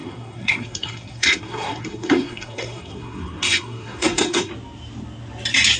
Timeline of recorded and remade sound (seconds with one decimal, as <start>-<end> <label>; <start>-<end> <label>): 0.0-4.5 remade; 4.5-5.8 recorded